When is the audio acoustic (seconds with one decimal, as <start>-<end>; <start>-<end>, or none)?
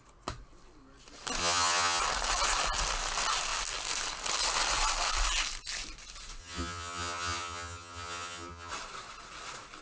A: 0.0-1.4; 2.0-6.4; 8.7-9.8